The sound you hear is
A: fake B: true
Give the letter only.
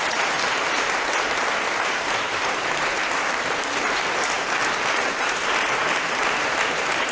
A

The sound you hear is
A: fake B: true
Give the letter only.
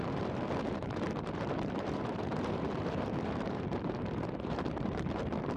A